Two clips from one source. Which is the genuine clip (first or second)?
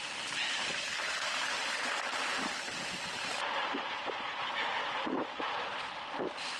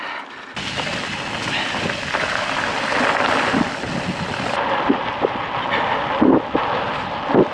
second